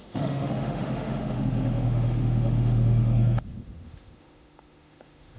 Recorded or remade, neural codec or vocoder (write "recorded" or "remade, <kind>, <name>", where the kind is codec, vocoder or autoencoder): remade, autoencoder, DAC-VAE